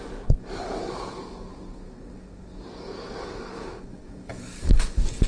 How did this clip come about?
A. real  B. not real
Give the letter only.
B